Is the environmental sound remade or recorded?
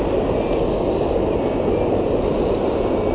recorded